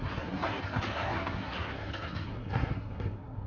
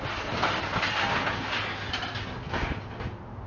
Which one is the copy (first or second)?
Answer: first